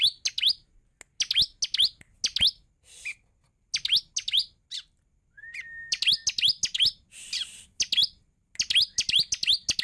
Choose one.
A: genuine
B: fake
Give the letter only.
A